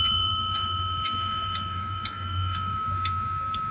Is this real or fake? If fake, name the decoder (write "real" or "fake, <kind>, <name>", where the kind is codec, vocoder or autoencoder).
fake, autoencoder, DAC-VAE